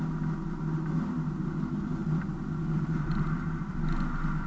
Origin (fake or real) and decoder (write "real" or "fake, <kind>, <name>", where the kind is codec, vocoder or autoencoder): real